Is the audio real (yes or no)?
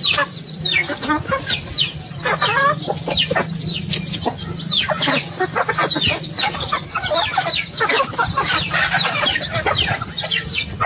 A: yes